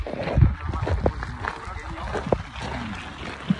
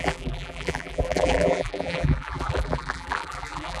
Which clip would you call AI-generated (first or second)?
second